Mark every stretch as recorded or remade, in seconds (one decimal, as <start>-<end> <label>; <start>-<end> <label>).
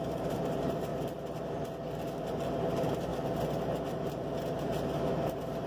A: 0.0-0.9 remade; 0.9-2.2 recorded; 2.2-3.1 remade; 3.1-5.1 recorded; 5.1-5.7 remade